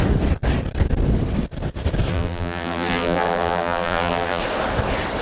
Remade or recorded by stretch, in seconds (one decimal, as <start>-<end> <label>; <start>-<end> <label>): 0.0-2.1 recorded; 2.1-4.4 remade; 4.4-5.2 recorded